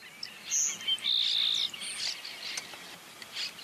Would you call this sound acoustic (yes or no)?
yes